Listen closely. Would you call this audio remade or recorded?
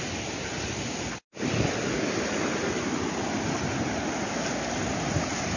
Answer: recorded